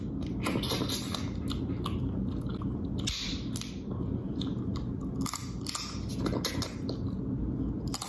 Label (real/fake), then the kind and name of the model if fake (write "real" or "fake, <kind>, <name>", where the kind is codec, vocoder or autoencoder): real